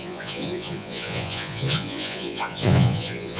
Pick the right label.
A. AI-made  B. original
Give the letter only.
A